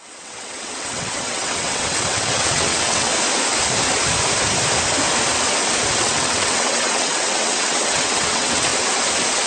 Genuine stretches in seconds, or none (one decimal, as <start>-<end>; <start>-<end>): 3.1-6.0; 8.7-9.5